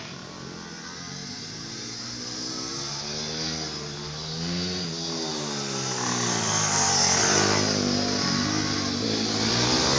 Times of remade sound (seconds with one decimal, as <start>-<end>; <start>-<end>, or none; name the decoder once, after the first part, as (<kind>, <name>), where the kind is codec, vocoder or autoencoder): 1.2-2.2 (vocoder, BigVGAN v2)